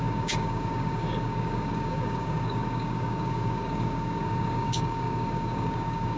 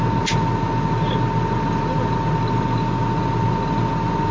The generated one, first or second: first